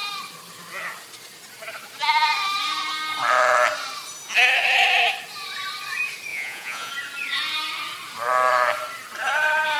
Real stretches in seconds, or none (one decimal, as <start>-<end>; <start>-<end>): 0.0-6.3; 6.9-9.8